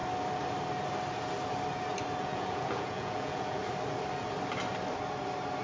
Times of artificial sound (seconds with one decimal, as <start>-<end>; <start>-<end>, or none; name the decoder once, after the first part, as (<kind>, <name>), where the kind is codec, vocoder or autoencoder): 2.2-3.6 (vocoder, Vocos)